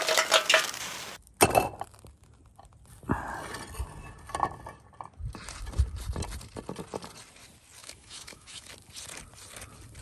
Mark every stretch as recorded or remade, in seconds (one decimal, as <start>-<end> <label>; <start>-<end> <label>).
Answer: 0.0-7.8 recorded; 7.8-8.7 remade; 8.7-10.0 recorded